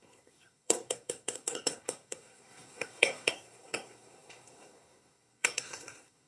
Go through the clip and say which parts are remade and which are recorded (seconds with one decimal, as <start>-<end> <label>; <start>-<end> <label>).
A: 0.0-6.3 remade